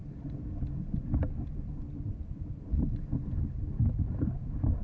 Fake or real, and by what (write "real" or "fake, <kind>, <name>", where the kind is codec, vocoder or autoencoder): real